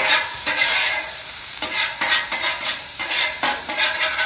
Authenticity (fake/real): fake